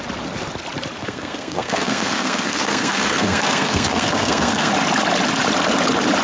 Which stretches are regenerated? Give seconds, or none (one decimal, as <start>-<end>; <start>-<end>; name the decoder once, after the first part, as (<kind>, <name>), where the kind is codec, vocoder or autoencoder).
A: 1.0-4.7 (codec, SNAC)